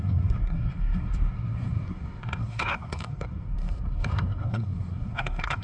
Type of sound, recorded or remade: remade